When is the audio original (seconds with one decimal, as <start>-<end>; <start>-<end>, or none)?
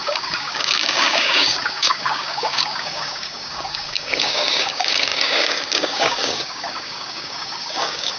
none